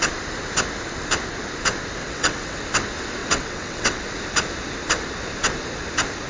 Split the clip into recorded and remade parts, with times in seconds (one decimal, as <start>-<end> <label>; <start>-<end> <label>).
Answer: 0.0-2.0 recorded; 2.0-2.6 remade; 2.6-3.2 recorded; 3.2-4.0 remade; 4.0-6.3 recorded